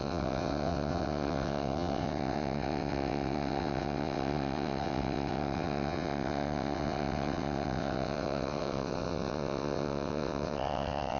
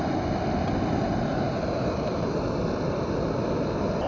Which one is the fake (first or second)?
first